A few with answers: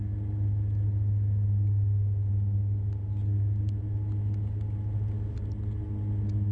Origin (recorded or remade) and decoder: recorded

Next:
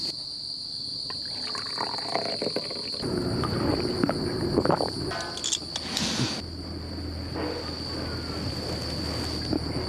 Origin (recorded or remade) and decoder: recorded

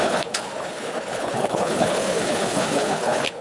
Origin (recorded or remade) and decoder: remade, codec, HILCodec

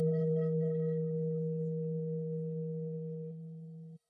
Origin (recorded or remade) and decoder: remade, codec, HILCodec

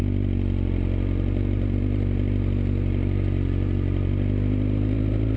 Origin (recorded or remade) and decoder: recorded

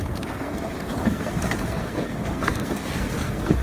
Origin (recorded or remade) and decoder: remade, codec, SNAC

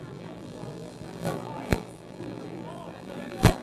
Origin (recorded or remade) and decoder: remade, vocoder, BigVGAN v2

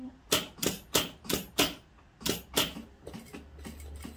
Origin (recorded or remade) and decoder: recorded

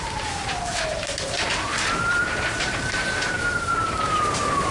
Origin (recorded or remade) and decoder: remade, vocoder, BigVGAN v2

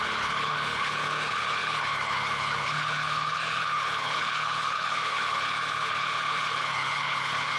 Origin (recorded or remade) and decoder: remade, codec, HILCodec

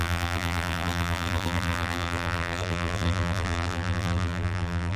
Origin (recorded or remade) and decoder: remade, vocoder, BigVGAN v2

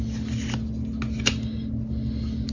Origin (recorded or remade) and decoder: recorded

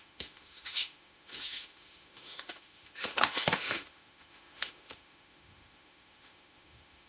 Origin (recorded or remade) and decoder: remade, autoencoder, DAC-VAE